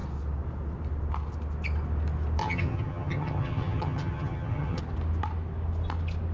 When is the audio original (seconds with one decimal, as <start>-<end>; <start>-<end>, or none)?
0.0-2.4; 4.8-6.3